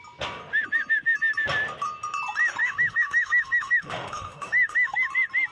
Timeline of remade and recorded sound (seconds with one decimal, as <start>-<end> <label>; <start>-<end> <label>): 0.0-2.6 recorded; 2.6-5.1 remade; 5.1-5.5 recorded